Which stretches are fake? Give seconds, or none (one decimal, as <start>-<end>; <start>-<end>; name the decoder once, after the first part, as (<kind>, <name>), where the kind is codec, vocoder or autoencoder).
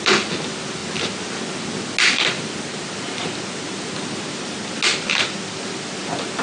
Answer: 4.9-5.6 (vocoder, BigVGAN v2)